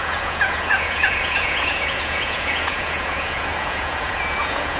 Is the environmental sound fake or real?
fake